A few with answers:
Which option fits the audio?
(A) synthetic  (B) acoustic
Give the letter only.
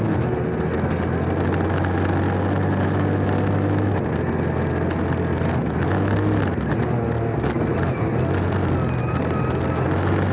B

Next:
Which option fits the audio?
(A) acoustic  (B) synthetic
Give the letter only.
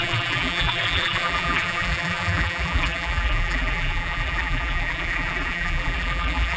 B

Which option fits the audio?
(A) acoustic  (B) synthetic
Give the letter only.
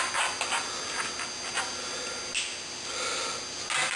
A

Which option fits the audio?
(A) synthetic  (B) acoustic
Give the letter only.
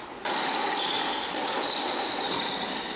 B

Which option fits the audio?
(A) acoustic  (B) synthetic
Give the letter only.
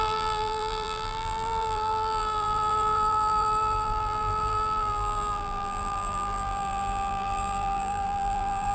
B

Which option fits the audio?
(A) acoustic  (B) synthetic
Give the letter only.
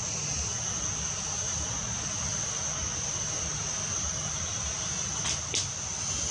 A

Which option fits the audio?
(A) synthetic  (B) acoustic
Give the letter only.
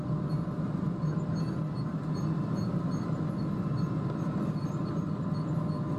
B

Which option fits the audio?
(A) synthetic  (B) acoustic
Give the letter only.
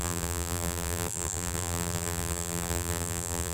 A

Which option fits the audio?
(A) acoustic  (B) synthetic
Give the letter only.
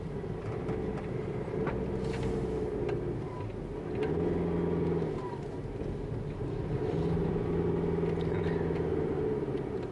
B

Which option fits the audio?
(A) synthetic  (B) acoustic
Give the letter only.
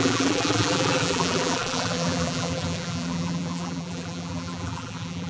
A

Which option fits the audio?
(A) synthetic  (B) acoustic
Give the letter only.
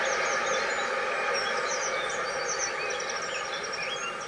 B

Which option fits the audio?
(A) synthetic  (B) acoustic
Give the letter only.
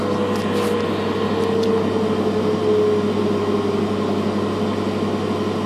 B